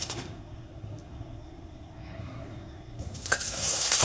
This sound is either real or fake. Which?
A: fake